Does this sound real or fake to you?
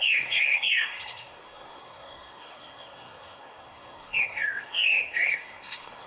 fake